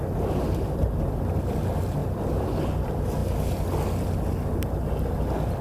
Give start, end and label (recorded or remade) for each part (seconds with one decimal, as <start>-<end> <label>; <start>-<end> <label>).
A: 0.0-2.0 recorded; 2.0-2.6 remade; 2.6-5.6 recorded